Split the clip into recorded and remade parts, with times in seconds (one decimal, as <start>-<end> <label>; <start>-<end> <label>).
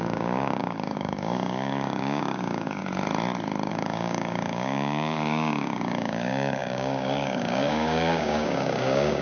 0.0-2.8 remade; 2.8-3.7 recorded; 3.7-9.2 remade